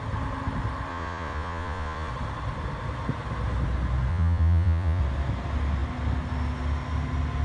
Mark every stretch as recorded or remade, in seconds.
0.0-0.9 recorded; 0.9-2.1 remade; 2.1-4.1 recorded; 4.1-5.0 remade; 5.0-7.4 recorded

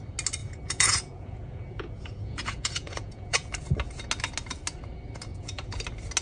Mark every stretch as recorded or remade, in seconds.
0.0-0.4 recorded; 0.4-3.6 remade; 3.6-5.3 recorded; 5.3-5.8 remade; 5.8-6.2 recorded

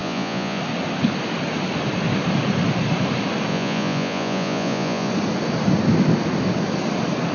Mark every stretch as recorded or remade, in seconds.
0.0-0.6 remade; 0.6-3.5 recorded; 3.5-5.1 remade; 5.1-7.3 recorded

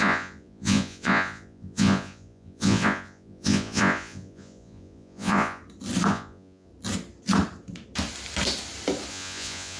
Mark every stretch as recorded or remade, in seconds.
0.0-5.6 remade; 5.6-6.1 recorded; 6.1-6.7 remade; 6.7-9.1 recorded; 9.1-9.8 remade

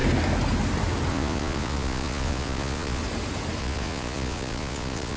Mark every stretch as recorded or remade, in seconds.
0.0-1.1 recorded; 1.1-3.0 remade; 3.0-3.6 recorded; 3.6-5.2 remade